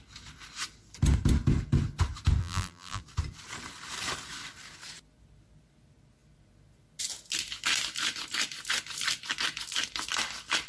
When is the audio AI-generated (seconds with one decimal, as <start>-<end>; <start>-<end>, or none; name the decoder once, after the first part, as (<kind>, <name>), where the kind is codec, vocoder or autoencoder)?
2.4-3.0 (vocoder, BigVGAN v2)

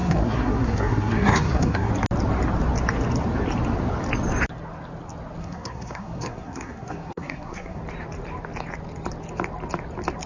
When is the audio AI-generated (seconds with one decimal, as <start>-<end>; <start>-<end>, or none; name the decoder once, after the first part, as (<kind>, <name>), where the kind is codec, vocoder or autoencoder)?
0.0-1.9 (codec, SNAC); 5.4-7.8